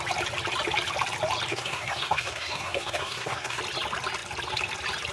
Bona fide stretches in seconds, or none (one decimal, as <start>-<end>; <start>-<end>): 0.0-1.5; 3.6-5.1